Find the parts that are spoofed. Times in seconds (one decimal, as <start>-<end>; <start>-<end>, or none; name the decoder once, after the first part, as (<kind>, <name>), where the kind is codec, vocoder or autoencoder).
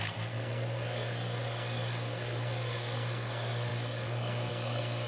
0.0-5.1 (codec, SNAC)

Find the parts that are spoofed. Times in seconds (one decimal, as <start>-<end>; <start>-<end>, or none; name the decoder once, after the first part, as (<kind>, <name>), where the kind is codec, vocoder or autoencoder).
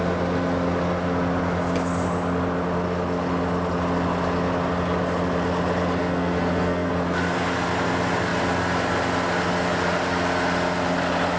6.0-6.9 (codec, SNAC)